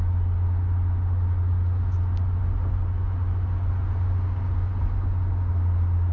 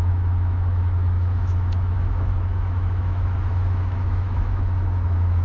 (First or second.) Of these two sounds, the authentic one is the first